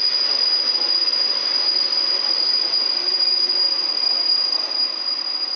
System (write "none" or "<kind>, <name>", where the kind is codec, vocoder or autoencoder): none